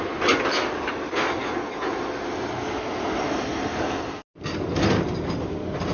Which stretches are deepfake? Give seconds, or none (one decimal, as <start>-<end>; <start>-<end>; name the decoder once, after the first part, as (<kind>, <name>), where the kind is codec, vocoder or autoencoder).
none